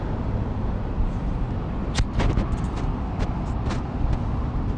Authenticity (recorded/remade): recorded